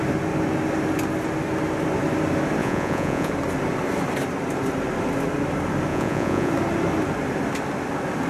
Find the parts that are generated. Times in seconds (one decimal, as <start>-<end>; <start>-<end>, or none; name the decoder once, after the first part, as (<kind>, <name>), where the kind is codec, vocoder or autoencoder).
2.6-3.3 (vocoder, Vocos); 5.9-6.5